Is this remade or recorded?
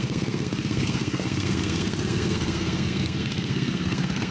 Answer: remade